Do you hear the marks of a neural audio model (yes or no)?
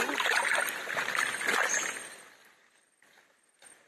no